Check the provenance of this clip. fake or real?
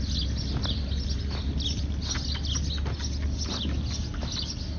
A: real